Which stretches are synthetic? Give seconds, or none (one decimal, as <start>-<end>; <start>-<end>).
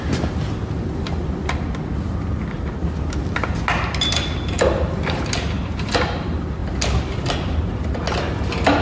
none